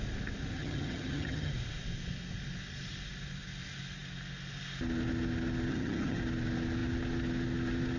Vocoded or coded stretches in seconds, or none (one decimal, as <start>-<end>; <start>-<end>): 0.5-1.5; 5.7-6.2